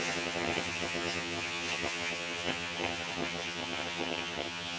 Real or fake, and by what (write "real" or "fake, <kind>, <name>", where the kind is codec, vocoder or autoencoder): fake, vocoder, HiFi-GAN